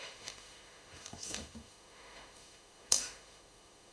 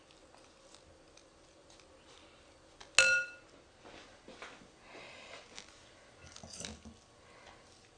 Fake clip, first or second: first